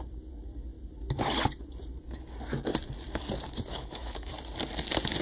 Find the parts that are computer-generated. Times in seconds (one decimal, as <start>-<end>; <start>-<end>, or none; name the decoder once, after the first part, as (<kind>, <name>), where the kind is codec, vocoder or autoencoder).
3.7-4.3 (autoencoder, DAC-VAE)